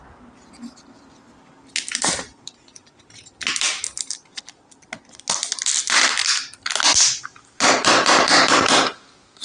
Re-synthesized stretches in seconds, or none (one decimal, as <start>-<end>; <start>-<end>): none